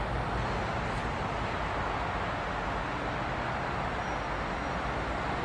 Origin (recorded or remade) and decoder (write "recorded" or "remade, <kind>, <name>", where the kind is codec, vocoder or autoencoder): recorded